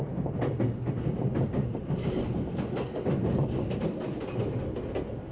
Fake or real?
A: real